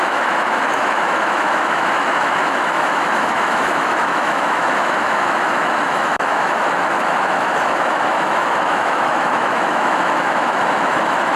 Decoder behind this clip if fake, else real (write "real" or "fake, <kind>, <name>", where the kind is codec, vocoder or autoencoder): fake, autoencoder, DAC-VAE